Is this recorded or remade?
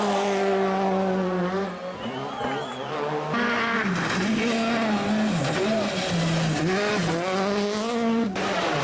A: recorded